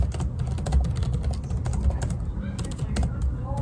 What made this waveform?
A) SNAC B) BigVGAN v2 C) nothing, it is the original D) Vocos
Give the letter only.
C